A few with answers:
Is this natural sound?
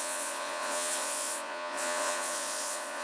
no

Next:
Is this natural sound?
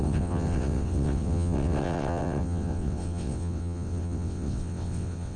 no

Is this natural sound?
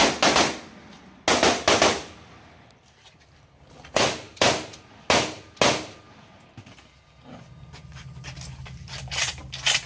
yes